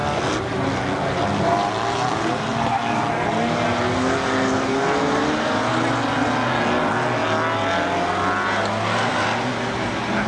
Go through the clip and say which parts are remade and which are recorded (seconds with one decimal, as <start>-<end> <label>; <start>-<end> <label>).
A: 0.0-10.3 recorded